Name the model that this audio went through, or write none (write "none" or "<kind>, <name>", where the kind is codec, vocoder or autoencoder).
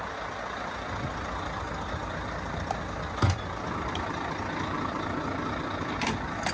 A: none